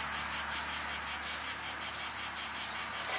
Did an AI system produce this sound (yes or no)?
no